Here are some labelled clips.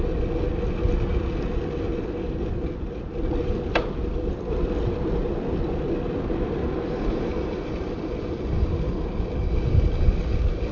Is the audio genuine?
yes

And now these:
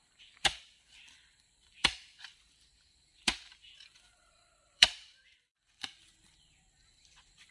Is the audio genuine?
no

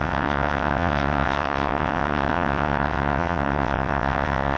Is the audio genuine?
no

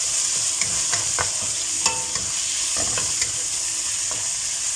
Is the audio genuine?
yes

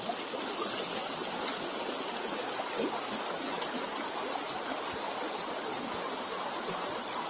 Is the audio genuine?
yes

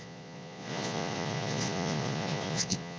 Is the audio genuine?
no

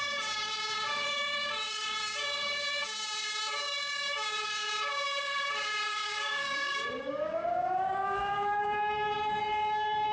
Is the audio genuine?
no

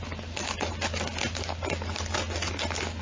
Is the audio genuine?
yes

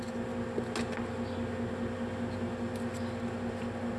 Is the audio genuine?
yes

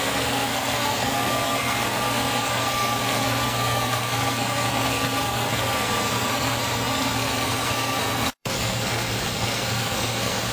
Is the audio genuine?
no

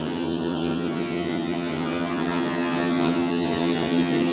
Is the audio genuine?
no